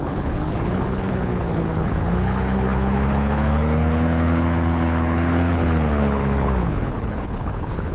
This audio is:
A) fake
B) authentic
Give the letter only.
A